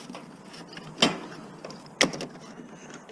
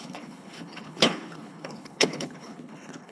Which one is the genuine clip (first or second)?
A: first